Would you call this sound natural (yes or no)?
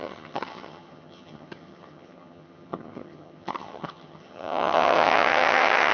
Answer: no